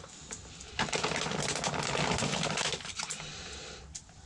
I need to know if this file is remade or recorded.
recorded